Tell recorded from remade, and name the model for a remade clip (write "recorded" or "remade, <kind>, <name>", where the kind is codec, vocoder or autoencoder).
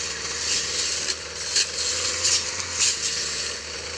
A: remade, vocoder, BigVGAN v2